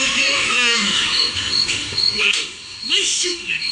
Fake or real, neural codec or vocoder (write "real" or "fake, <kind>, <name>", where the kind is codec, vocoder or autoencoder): fake, autoencoder, DAC-VAE